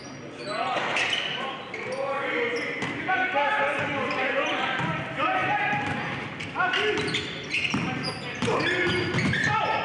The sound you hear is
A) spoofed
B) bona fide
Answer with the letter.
B